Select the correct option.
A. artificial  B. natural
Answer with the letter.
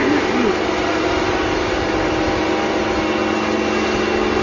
B